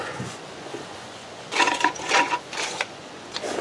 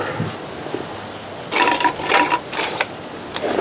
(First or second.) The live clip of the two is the second